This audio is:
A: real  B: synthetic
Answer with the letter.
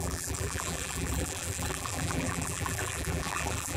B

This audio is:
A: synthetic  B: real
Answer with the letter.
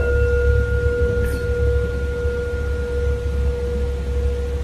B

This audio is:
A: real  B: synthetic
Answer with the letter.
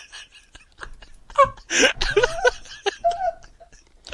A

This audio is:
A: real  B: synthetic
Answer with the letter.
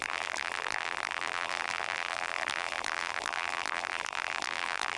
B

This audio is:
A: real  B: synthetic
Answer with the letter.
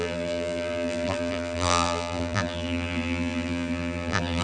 B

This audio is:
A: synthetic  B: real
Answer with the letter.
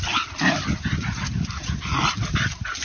B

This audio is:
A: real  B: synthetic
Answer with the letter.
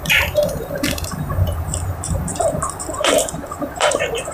B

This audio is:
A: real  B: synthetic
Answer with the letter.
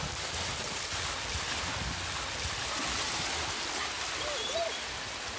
A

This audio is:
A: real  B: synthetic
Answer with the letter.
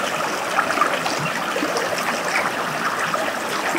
A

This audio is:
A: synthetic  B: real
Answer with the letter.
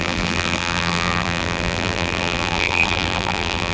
A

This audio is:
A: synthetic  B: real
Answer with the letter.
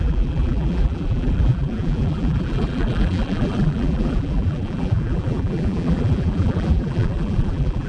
A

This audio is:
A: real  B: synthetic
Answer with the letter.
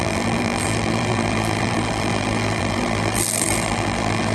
B